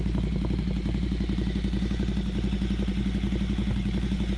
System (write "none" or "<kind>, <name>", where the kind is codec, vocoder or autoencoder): none